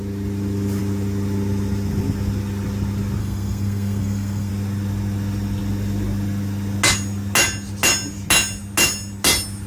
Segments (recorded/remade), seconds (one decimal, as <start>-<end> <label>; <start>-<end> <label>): 0.0-3.2 recorded; 3.2-4.5 remade; 4.5-9.7 recorded